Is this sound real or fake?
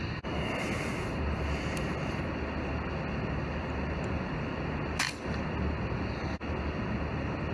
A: real